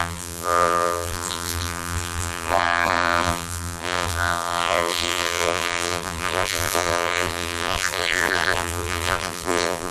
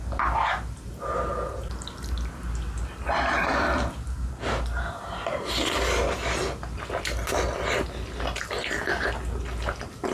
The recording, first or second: second